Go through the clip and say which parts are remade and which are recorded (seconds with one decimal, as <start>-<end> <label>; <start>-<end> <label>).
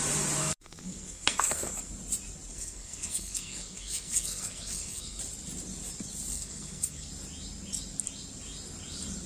0.0-0.4 recorded; 0.4-1.9 remade; 1.9-2.5 recorded; 2.5-5.2 remade; 5.2-6.3 recorded; 6.3-7.1 remade; 7.1-9.3 recorded